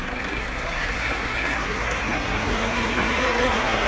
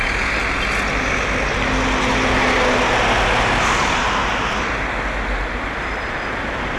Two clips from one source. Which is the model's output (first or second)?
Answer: first